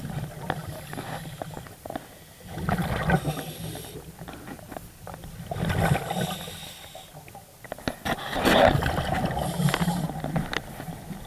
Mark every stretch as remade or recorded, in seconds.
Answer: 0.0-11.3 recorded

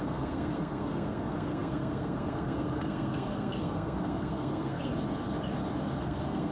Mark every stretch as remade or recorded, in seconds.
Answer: 0.0-4.9 remade; 4.9-6.0 recorded; 6.0-6.5 remade